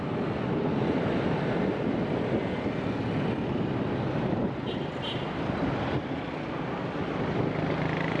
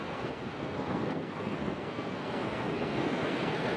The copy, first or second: second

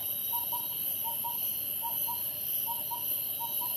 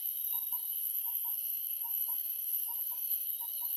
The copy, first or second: second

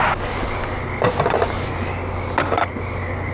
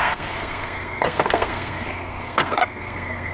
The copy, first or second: second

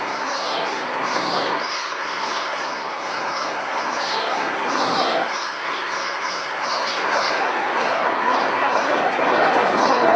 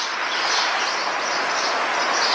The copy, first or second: first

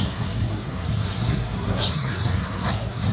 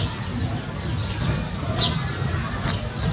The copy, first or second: first